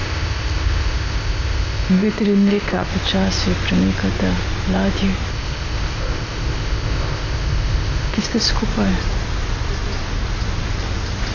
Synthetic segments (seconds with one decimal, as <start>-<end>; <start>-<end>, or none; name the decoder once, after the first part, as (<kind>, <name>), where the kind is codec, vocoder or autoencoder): 0.0-2.9 (codec, ZipCodec); 5.3-8.5